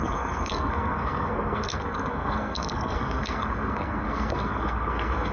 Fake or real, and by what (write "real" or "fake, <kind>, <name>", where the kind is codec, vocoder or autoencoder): fake, codec, SNAC